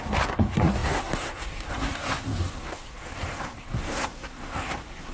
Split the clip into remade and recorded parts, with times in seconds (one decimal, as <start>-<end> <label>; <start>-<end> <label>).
0.0-5.1 remade